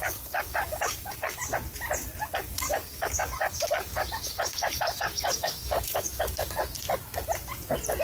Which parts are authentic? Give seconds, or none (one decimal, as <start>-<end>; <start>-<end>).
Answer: 1.4-2.3; 6.6-8.0